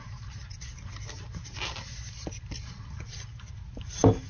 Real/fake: real